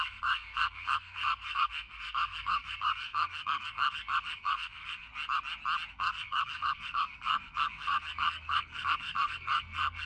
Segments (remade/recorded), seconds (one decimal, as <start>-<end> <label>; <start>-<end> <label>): 0.0-5.1 remade; 5.1-5.9 recorded; 5.9-10.1 remade